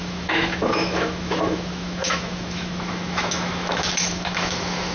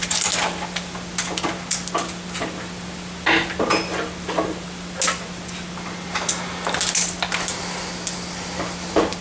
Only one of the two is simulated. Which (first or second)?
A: first